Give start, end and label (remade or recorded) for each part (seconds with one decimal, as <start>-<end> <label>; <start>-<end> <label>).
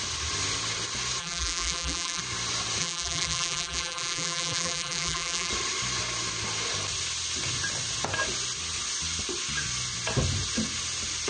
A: 0.0-1.2 recorded; 1.2-2.2 remade; 2.2-2.8 recorded; 2.8-5.5 remade; 5.5-11.3 recorded